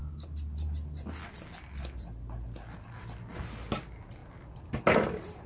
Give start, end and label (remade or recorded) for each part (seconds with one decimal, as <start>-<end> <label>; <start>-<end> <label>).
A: 0.0-5.5 recorded